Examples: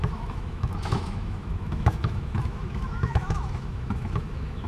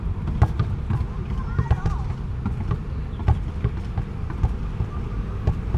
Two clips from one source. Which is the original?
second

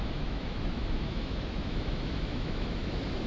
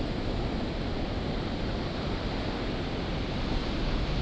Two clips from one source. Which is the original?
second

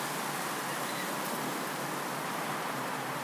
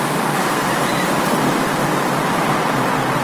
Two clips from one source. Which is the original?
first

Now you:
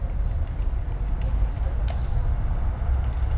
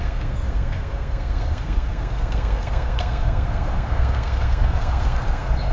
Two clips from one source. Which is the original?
first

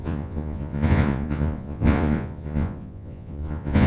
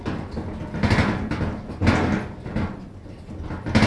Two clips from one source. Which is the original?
second